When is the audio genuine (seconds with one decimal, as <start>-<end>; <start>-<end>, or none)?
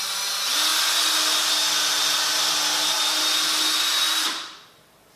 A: 0.0-5.2